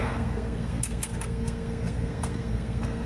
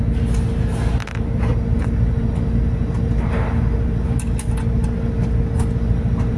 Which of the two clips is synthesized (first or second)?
first